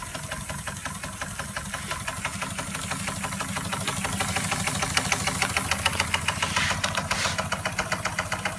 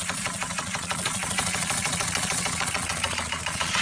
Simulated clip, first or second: second